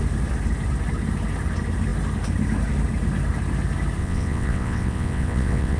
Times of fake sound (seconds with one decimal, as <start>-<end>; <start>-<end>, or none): 4.0-5.8